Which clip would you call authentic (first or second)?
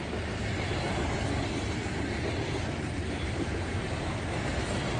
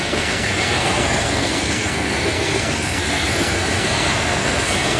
first